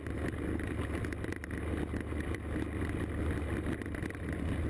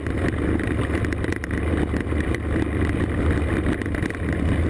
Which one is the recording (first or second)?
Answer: first